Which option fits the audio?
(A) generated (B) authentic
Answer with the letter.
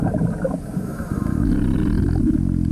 B